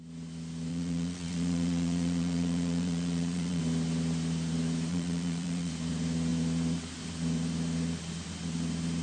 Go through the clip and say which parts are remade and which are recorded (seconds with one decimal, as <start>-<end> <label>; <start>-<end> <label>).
0.0-0.7 recorded; 0.7-3.6 remade; 3.6-4.9 recorded; 4.9-5.7 remade; 5.7-9.0 recorded